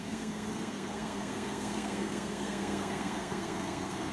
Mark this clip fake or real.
fake